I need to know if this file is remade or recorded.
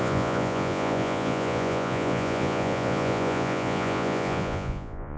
remade